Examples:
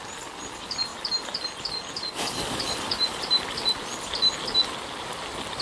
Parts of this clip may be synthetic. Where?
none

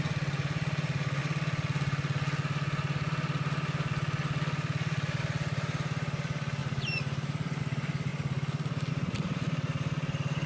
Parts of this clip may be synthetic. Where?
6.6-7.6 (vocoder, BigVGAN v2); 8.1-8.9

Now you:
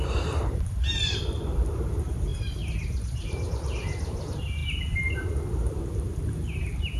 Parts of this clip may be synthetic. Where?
0.0-4.6 (vocoder, BigVGAN v2); 5.6-7.0